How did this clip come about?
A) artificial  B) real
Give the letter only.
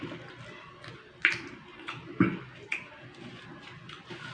B